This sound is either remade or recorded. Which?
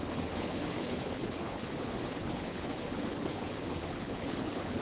remade